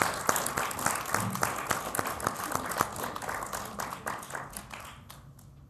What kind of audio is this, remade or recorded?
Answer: recorded